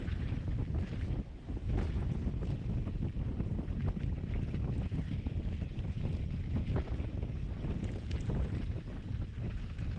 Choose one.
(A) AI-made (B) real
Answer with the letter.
B